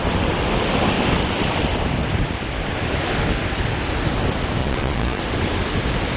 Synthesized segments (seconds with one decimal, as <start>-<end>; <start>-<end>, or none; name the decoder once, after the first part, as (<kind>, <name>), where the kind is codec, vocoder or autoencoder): 4.6-5.2 (vocoder, Vocos)